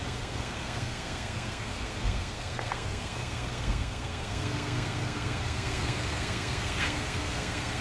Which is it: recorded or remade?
remade